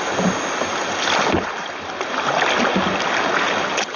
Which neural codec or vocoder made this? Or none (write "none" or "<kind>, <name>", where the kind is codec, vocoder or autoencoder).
none